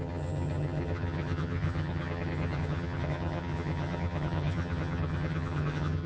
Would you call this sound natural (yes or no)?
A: no